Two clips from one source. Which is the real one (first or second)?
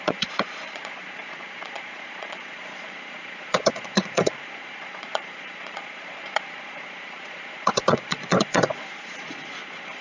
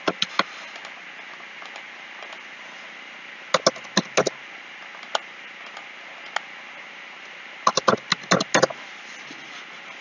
second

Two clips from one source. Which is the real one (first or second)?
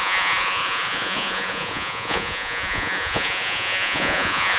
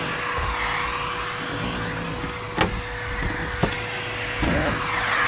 second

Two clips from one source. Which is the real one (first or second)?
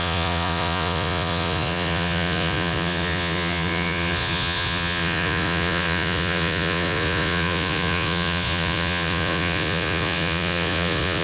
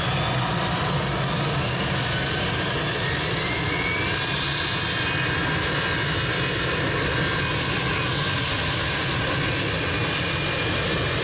second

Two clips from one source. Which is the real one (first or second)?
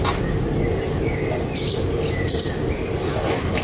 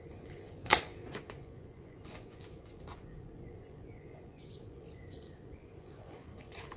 first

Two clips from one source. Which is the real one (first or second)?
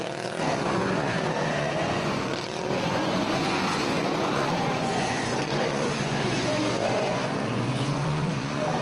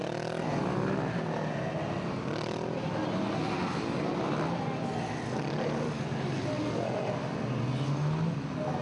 second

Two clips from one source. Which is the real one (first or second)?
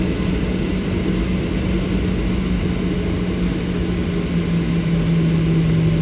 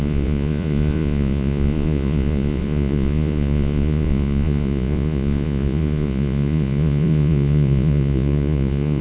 first